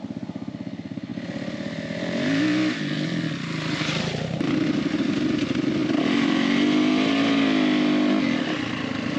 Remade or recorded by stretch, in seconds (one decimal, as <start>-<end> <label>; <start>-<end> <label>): 0.0-9.2 recorded

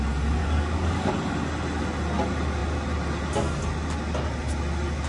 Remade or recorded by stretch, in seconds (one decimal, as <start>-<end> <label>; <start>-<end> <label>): 0.0-0.4 recorded; 0.4-1.1 remade; 1.1-5.1 recorded